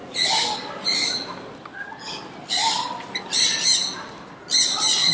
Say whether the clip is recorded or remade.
recorded